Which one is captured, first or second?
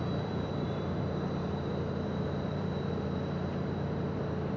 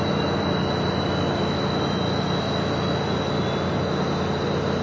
second